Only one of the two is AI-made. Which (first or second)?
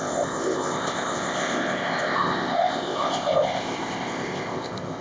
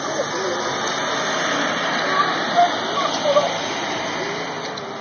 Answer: first